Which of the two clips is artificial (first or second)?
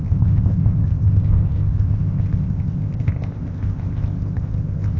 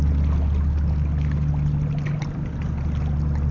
first